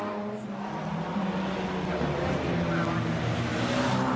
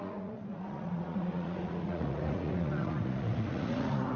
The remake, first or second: second